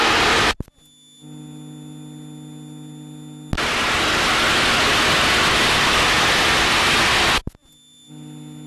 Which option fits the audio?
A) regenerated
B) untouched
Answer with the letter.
B